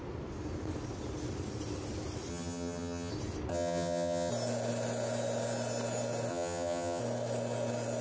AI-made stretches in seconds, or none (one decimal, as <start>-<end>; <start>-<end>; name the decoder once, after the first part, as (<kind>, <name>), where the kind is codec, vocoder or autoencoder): 2.3-3.1 (vocoder, HiFi-GAN); 3.5-4.3; 6.3-7.0